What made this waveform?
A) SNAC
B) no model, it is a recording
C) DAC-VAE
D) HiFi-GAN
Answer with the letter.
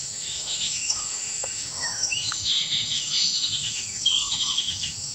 C